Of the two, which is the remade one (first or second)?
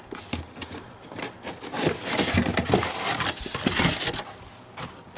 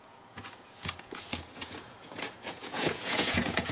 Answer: second